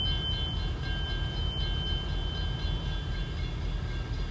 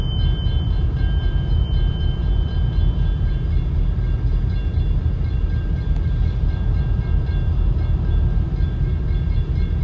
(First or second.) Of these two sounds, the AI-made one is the second